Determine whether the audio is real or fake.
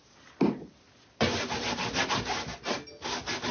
real